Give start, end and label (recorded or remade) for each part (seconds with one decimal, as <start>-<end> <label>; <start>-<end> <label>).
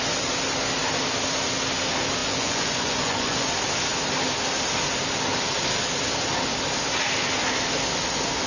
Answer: 0.0-2.2 recorded; 2.2-3.5 remade; 3.5-8.5 recorded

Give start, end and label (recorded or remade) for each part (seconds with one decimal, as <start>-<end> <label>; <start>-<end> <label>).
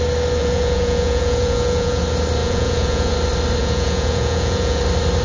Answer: 0.0-0.4 recorded; 0.4-2.0 remade; 2.0-2.4 recorded; 2.4-3.1 remade; 3.1-3.6 recorded; 3.6-4.8 remade; 4.8-5.2 recorded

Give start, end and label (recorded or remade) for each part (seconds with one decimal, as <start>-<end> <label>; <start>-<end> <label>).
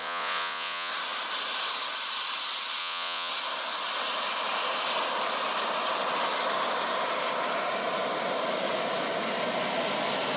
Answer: 0.0-0.9 remade; 0.9-2.8 recorded; 2.8-3.3 remade; 3.3-10.4 recorded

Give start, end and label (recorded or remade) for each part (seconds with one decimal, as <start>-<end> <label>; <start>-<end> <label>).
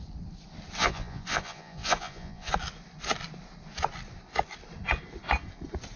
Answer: 0.0-0.8 recorded; 0.8-2.5 remade; 2.5-6.0 recorded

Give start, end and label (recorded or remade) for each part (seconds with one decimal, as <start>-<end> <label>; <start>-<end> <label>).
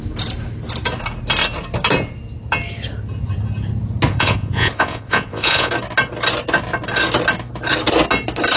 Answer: 0.0-4.1 recorded; 4.1-5.7 remade; 5.7-8.6 recorded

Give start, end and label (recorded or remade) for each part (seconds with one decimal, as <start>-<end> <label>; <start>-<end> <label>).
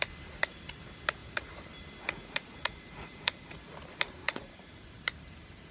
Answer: 0.0-1.2 recorded; 1.2-1.7 remade; 1.7-2.2 recorded; 2.2-3.6 remade; 3.6-4.2 recorded; 4.2-4.8 remade; 4.8-5.7 recorded